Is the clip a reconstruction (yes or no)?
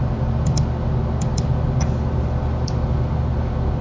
no